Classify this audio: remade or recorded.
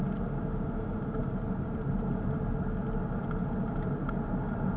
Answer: recorded